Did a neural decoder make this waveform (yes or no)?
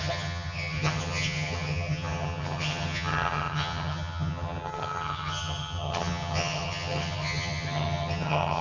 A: yes